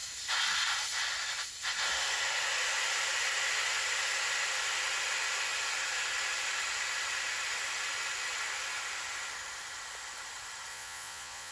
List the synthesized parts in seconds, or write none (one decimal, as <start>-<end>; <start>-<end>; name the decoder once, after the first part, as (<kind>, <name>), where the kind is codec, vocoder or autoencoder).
10.7-11.5 (vocoder, Vocos)